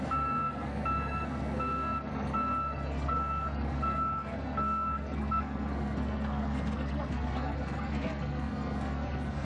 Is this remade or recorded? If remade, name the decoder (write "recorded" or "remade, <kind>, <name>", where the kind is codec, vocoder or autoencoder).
remade, codec, SNAC